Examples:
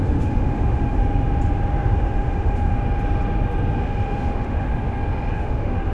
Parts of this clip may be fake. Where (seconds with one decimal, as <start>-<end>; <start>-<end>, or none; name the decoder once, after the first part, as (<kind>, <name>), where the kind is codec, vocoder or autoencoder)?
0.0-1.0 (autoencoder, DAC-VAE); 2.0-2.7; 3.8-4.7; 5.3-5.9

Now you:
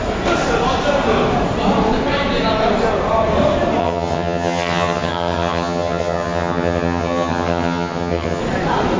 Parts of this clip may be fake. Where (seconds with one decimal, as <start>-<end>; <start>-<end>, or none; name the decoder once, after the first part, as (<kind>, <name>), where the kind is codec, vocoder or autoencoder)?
3.8-8.4 (vocoder, HiFi-GAN)

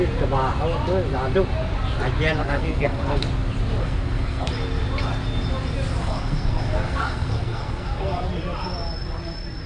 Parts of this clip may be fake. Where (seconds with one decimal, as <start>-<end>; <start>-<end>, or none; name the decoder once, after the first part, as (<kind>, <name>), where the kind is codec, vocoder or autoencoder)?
2.4-3.2 (codec, SNAC); 3.8-4.5; 6.0-8.2

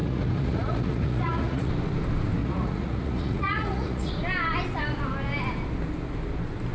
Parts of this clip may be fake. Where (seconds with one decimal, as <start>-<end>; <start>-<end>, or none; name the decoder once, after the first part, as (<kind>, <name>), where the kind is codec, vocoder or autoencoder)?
0.0-1.7 (vocoder, Vocos); 2.4-4.1